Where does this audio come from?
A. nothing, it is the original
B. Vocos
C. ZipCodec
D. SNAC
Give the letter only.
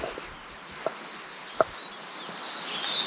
A